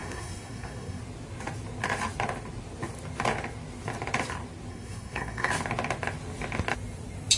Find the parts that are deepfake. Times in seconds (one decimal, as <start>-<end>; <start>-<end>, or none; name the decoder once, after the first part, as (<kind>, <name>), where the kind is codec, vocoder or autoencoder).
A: 0.0-1.0 (codec, SNAC); 4.7-5.5